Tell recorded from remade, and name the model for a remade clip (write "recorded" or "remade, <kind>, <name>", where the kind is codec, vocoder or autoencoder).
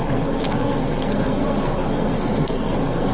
remade, codec, SNAC